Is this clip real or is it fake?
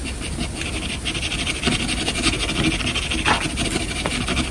real